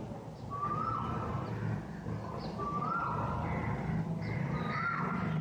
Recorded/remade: recorded